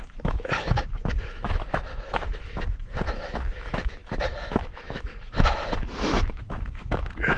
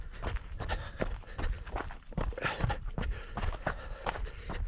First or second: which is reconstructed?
first